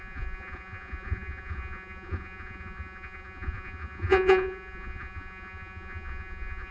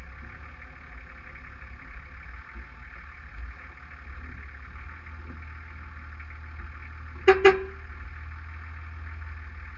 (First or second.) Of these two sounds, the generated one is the first